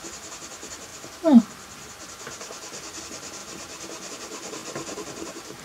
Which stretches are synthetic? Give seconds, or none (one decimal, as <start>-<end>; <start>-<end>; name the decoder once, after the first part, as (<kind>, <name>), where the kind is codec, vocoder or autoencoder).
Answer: 0.0-0.9 (vocoder, BigVGAN v2); 3.0-3.4; 4.1-5.6